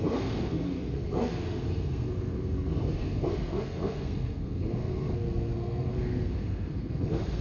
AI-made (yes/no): yes